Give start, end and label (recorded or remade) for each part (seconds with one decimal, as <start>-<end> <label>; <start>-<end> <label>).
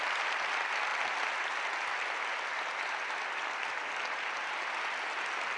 0.0-5.6 recorded